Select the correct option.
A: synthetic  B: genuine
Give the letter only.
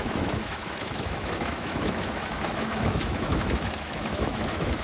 A